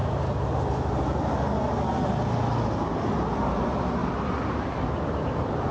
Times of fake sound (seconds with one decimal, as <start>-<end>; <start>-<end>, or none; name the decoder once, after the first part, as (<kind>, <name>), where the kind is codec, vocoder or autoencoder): none

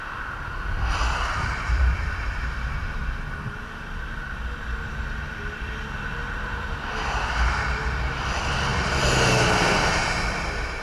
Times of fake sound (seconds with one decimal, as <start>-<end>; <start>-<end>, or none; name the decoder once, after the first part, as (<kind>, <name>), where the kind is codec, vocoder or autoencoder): 0.0-3.0 (vocoder, BigVGAN v2); 5.1-8.7; 10.2-10.8

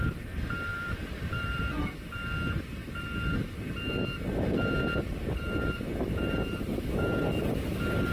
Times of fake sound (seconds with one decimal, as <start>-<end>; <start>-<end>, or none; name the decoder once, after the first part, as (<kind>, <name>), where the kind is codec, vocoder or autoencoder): 0.7-1.6 (vocoder, BigVGAN v2)

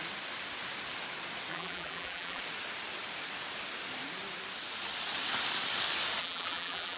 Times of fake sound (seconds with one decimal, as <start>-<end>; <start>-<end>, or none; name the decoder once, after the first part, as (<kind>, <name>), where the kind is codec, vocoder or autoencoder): 1.5-2.4 (vocoder, BigVGAN v2); 6.2-7.0

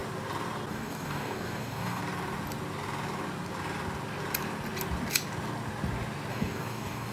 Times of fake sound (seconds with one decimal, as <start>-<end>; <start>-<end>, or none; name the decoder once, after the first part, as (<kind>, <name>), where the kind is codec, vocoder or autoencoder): 0.7-2.0 (codec, DAC); 6.3-7.1

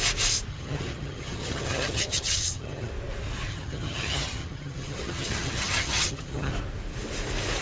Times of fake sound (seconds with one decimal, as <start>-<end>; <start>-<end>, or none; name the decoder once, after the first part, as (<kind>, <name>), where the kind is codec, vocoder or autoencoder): 0.5-2.9 (vocoder, HiFi-GAN); 3.5-6.5